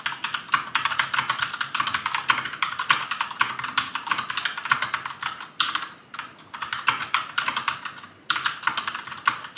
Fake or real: real